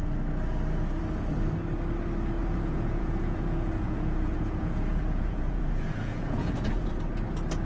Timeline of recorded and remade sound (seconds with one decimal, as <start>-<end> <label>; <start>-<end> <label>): 0.0-2.4 recorded; 2.4-7.0 remade; 7.0-7.7 recorded

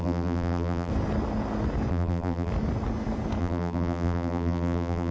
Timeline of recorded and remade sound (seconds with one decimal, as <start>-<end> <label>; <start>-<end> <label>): 0.0-0.9 remade; 0.9-1.9 recorded; 1.9-2.5 remade; 2.5-3.4 recorded; 3.4-5.1 remade

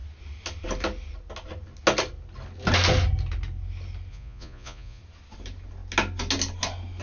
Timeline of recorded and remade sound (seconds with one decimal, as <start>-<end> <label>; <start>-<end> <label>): 0.0-4.1 recorded; 4.1-5.0 remade; 5.0-7.0 recorded

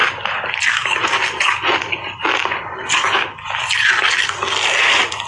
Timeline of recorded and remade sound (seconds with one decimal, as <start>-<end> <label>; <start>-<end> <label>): 0.0-5.3 recorded

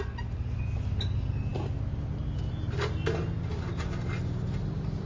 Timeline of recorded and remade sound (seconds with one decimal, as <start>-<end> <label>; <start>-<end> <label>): 0.0-5.1 recorded

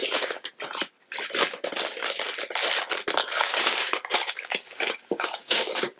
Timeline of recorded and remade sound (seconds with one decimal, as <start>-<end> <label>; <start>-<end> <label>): 0.0-0.5 remade; 0.5-3.2 recorded; 3.2-6.0 remade

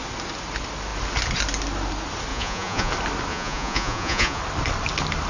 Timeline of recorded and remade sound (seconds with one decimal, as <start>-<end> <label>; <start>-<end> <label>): 0.0-2.3 recorded; 2.3-2.9 remade; 2.9-3.3 recorded; 3.3-4.4 remade; 4.4-5.3 recorded